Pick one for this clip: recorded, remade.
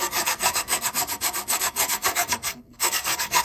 remade